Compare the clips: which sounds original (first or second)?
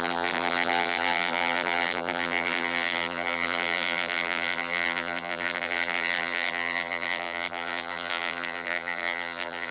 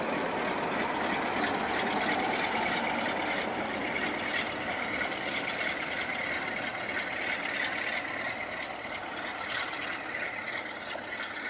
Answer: second